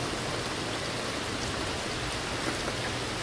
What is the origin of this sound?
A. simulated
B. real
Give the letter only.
B